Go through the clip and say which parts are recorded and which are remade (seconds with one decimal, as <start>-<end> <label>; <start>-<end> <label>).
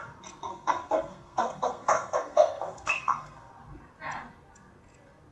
0.0-0.5 recorded; 0.5-3.5 remade; 3.5-5.3 recorded